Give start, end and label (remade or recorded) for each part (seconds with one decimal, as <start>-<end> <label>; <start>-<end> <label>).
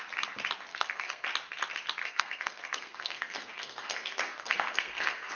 0.0-0.7 recorded; 0.7-1.2 remade; 1.2-2.0 recorded; 2.0-5.3 remade